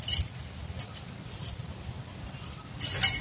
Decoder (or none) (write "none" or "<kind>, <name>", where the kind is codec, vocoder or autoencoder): none